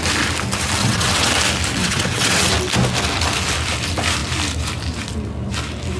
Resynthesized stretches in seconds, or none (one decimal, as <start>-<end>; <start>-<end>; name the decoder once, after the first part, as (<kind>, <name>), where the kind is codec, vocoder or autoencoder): 0.8-1.3 (vocoder, WaveNeXt); 1.8-2.4